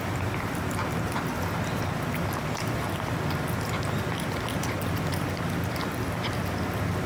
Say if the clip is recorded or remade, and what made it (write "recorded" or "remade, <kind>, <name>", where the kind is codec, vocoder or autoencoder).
recorded